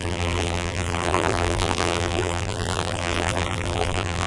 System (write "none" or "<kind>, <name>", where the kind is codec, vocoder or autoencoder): vocoder, BigVGAN v2